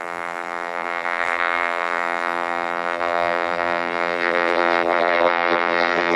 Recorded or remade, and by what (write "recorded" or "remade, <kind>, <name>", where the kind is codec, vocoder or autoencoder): remade, vocoder, BigVGAN v2